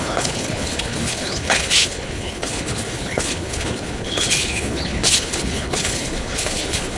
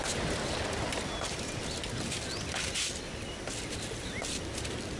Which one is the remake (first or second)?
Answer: first